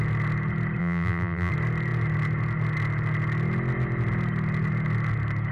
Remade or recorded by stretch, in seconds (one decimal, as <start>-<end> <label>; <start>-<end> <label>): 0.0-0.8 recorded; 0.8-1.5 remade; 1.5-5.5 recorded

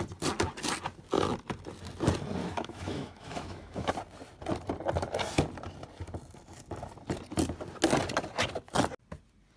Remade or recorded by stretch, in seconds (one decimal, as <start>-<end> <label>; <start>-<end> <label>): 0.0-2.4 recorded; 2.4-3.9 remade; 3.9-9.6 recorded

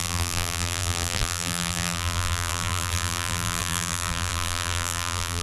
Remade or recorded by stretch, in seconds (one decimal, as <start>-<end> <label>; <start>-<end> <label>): 0.0-5.4 remade